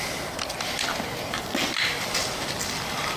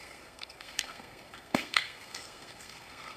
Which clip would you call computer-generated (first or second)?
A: second